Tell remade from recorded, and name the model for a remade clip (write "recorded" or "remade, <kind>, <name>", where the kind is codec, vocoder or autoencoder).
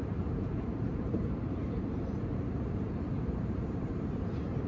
remade, vocoder, BigVGAN v2